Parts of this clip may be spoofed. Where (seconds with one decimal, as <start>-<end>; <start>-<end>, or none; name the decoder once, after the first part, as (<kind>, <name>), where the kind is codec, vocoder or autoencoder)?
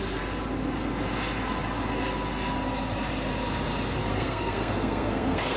4.0-5.6 (codec, SNAC)